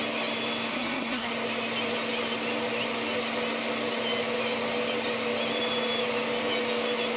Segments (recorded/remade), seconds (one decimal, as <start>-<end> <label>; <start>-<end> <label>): 0.0-0.7 recorded; 0.7-1.3 remade; 1.3-7.2 recorded